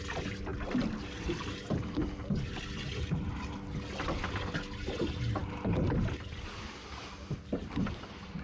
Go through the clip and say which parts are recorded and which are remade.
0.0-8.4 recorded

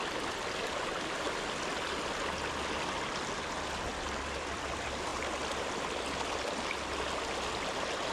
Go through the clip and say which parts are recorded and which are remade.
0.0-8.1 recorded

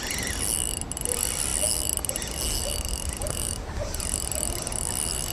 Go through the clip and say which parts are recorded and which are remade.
0.0-3.2 recorded; 3.2-4.0 remade; 4.0-5.3 recorded

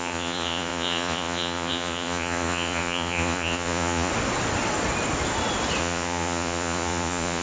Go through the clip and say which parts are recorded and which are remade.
0.0-4.1 remade; 4.1-5.8 recorded; 5.8-7.4 remade

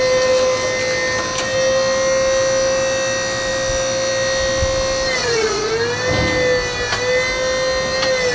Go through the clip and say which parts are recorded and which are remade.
0.0-5.2 recorded; 5.2-5.7 remade; 5.7-8.3 recorded

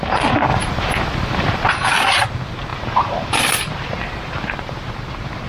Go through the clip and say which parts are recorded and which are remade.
0.0-0.5 recorded; 0.5-1.7 remade; 1.7-2.7 recorded; 2.7-4.9 remade; 4.9-5.5 recorded

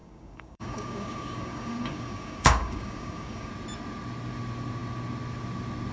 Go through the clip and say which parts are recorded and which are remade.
0.0-3.5 remade; 3.5-5.9 recorded

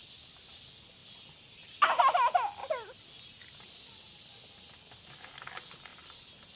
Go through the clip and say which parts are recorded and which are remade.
0.0-0.6 remade; 0.6-1.0 recorded; 1.0-1.8 remade; 1.8-5.9 recorded; 5.9-6.6 remade